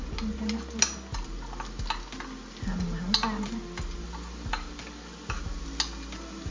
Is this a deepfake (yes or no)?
no